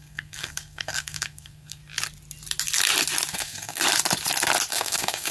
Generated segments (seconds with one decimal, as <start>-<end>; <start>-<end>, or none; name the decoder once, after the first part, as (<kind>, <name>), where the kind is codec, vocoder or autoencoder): 0.0-1.8 (codec, SNAC); 3.3-3.8; 4.7-5.3